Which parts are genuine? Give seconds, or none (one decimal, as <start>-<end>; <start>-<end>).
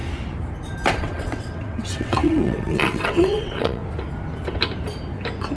0.0-0.9; 3.8-5.6